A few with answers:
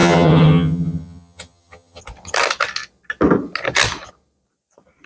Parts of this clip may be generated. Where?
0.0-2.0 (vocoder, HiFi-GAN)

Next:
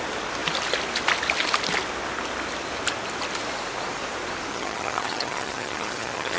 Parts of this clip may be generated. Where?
4.5-6.4 (vocoder, HiFi-GAN)

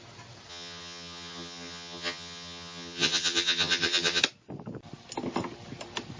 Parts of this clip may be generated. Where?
0.5-4.2 (vocoder, HiFi-GAN)

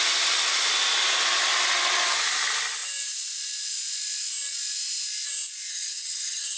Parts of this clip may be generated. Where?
5.7-6.6 (vocoder, HiFi-GAN)

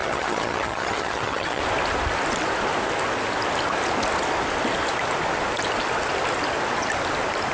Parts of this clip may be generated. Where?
0.0-1.6 (vocoder, HiFi-GAN)

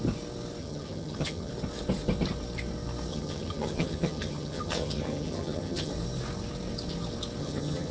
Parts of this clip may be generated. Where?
0.6-1.5 (vocoder, HiFi-GAN); 3.1-5.9; 7.4-7.9

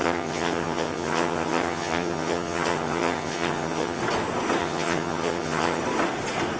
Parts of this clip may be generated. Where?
0.0-4.0 (vocoder, HiFi-GAN); 4.6-5.8

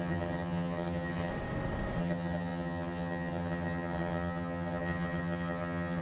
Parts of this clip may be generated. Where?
0.0-1.3 (vocoder, HiFi-GAN); 2.0-6.0